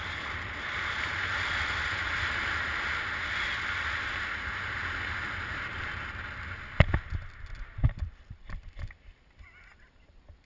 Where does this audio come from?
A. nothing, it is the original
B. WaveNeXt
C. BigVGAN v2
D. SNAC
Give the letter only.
A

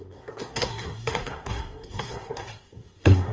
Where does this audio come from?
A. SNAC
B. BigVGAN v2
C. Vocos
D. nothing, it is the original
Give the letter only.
A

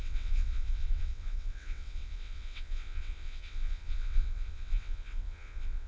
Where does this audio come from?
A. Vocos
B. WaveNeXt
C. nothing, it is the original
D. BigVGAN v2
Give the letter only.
B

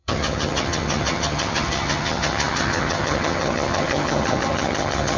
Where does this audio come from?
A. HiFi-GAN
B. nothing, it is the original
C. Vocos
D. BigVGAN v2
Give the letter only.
A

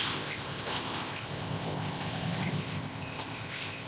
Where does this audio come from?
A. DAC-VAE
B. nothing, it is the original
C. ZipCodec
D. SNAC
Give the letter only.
C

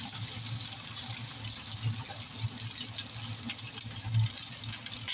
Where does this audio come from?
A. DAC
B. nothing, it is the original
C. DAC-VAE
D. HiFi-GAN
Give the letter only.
B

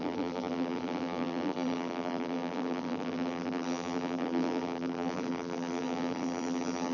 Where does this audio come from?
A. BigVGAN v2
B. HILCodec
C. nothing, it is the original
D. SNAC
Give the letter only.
A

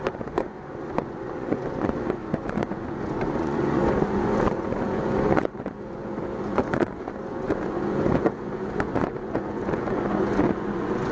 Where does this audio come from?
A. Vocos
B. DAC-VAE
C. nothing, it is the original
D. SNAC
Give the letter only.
A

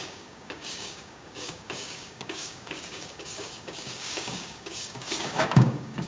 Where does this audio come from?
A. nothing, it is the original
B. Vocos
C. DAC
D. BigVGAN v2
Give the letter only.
C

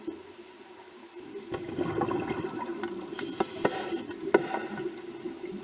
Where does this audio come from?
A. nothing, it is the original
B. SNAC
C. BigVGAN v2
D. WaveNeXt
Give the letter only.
A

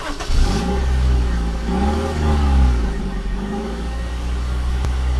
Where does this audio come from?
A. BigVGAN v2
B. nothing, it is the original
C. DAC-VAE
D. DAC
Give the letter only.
D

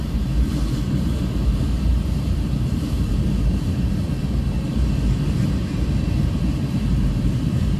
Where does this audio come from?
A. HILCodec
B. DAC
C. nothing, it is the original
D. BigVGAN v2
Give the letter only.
D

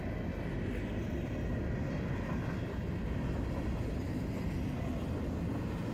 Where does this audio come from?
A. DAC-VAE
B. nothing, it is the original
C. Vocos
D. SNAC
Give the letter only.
B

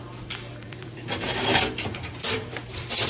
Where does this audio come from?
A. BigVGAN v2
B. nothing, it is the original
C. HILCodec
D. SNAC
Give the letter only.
A